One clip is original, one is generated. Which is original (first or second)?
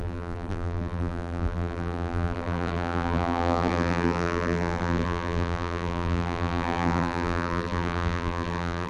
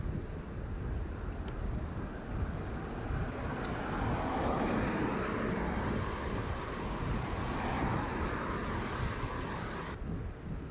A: second